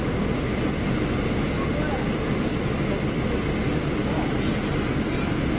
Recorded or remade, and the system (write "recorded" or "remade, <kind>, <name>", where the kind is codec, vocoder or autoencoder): recorded